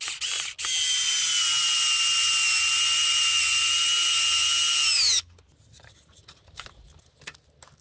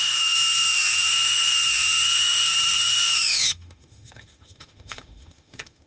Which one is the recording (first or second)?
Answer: first